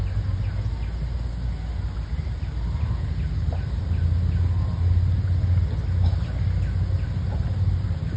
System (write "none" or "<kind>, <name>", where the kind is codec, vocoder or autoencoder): none